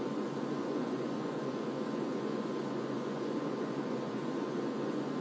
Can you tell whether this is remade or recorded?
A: remade